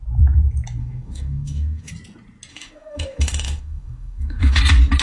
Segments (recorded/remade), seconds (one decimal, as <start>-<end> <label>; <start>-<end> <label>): 0.0-0.8 recorded; 0.8-1.9 remade; 1.9-2.5 recorded; 2.5-4.6 remade; 4.6-5.0 recorded